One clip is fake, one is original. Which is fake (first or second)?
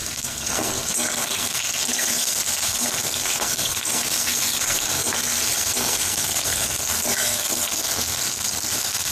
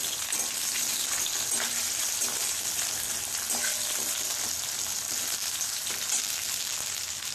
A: first